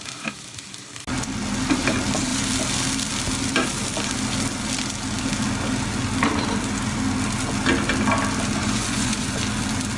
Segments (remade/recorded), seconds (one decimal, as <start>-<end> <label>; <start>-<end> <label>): 0.0-8.6 recorded; 8.6-9.4 remade; 9.4-10.0 recorded